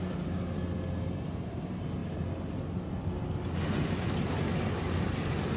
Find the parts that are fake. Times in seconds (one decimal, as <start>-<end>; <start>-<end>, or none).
none